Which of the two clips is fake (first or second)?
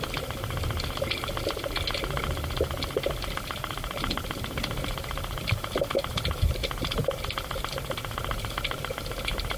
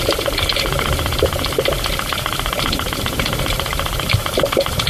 second